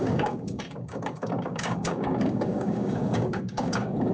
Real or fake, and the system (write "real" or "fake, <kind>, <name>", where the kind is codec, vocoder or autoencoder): fake, codec, DAC